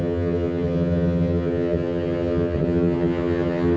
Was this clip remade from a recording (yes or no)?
yes